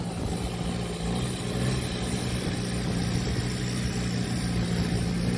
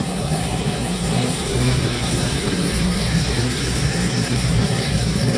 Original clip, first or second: first